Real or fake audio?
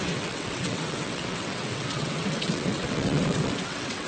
fake